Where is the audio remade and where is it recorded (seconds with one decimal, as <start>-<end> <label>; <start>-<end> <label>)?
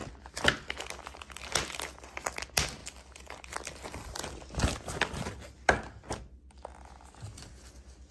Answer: 0.0-1.2 remade; 1.2-2.8 recorded; 2.8-4.5 remade; 4.5-8.1 recorded